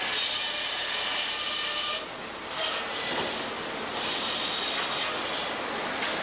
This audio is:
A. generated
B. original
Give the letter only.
B